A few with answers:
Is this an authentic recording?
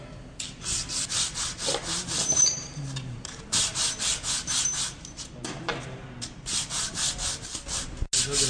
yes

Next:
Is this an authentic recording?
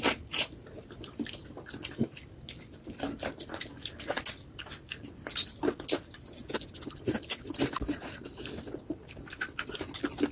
yes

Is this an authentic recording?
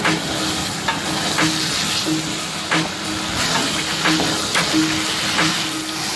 yes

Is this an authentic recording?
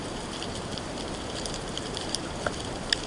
no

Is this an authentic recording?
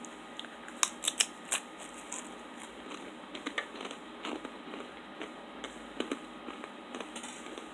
yes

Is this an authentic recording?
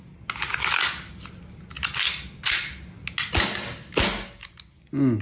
yes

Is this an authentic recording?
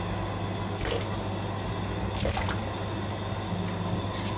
yes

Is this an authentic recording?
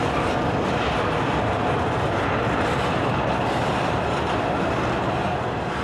yes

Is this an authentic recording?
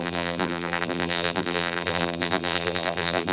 no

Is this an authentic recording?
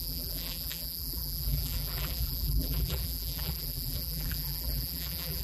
no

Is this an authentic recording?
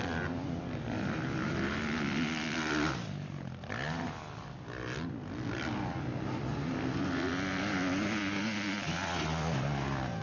yes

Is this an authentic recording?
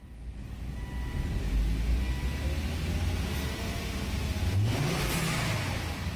yes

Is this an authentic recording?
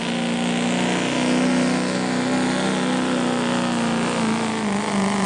yes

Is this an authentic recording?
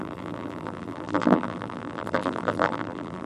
no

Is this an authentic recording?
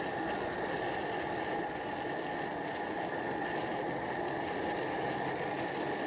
yes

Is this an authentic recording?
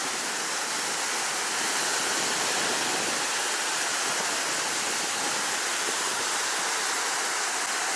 yes